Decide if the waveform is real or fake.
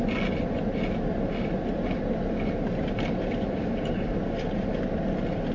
real